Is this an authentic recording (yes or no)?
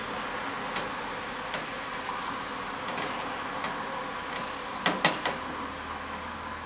yes